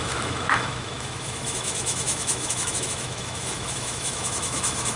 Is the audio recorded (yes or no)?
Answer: no